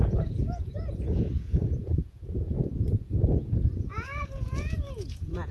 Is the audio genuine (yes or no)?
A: no